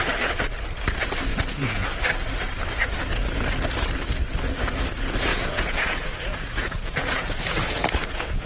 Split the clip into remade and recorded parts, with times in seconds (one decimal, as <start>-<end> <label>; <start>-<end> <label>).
0.0-1.3 recorded; 1.3-2.0 remade; 2.0-5.3 recorded; 5.3-8.5 remade